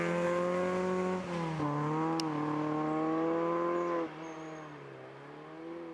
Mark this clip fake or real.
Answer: real